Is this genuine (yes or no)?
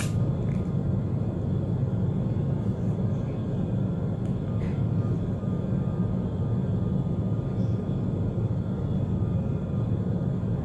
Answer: yes